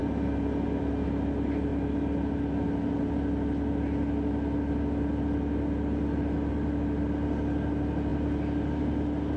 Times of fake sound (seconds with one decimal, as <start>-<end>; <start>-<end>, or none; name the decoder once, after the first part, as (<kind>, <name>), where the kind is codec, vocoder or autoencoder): none